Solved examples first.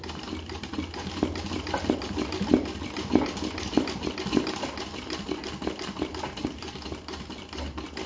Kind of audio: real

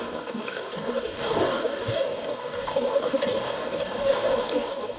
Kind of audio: fake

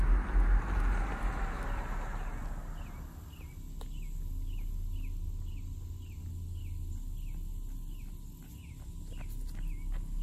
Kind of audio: real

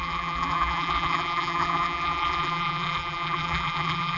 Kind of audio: fake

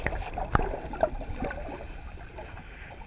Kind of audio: real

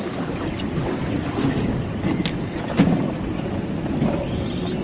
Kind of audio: real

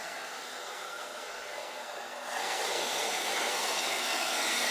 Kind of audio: fake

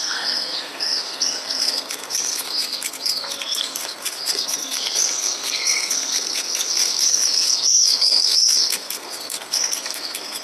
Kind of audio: fake